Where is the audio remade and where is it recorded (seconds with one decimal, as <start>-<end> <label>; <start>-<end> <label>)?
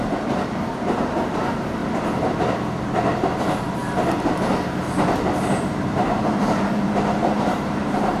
0.0-1.8 remade; 1.8-2.5 recorded; 2.5-3.8 remade; 3.8-5.6 recorded; 5.6-8.2 remade